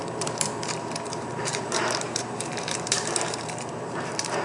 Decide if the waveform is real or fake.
fake